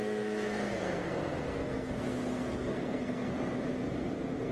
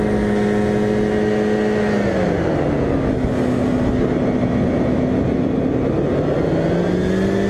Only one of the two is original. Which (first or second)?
second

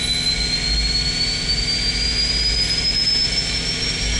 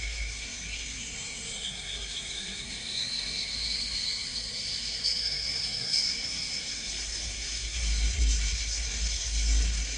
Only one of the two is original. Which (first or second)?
first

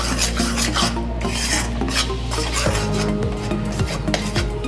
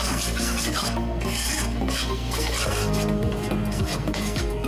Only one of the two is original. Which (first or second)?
first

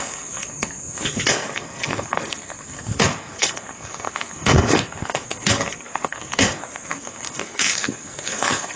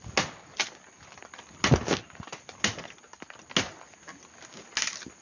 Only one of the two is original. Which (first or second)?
second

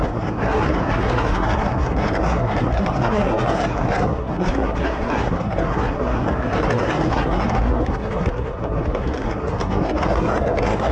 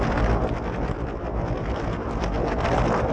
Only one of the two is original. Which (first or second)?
second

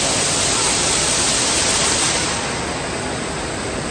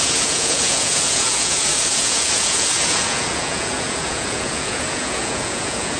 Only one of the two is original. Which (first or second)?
first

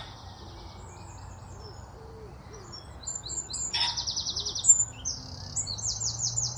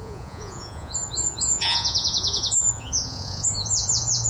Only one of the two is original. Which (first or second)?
first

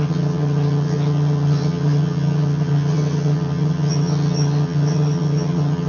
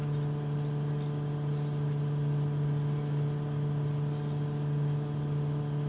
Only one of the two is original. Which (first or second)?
second